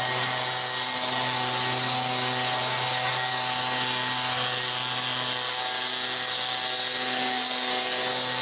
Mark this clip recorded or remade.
recorded